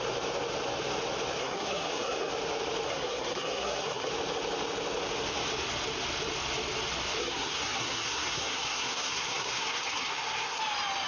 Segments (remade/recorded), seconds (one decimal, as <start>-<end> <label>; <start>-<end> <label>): 0.0-1.4 recorded; 1.4-2.3 remade; 2.3-2.9 recorded; 2.9-4.1 remade; 4.1-7.2 recorded; 7.2-10.6 remade; 10.6-11.1 recorded

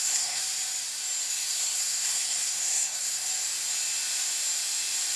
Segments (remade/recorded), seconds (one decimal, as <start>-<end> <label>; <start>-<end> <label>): 0.0-0.4 remade; 0.4-1.3 recorded; 1.3-3.3 remade; 3.3-5.2 recorded

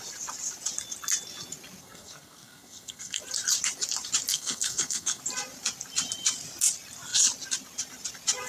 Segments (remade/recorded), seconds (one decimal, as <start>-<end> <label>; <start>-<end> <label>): 0.0-1.8 recorded; 1.8-3.2 remade; 3.2-4.3 recorded; 4.3-5.2 remade; 5.2-8.5 recorded